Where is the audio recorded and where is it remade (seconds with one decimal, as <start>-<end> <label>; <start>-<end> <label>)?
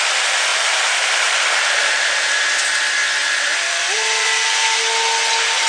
0.0-0.5 recorded; 0.5-2.3 remade; 2.3-3.2 recorded; 3.2-4.5 remade; 4.5-5.7 recorded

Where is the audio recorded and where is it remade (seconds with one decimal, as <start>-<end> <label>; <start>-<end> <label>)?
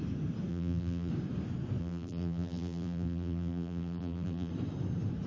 0.0-0.5 recorded; 0.5-1.1 remade; 1.1-1.8 recorded; 1.8-4.5 remade; 4.5-5.3 recorded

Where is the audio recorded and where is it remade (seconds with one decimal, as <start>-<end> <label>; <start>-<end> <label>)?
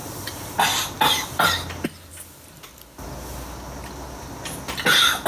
0.0-2.1 remade; 2.1-5.3 recorded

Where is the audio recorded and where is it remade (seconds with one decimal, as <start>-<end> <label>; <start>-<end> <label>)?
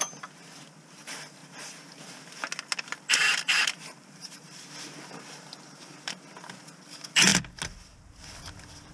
0.0-3.3 recorded; 3.3-6.1 remade; 6.1-8.9 recorded